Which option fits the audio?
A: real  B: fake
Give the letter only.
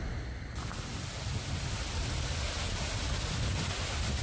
A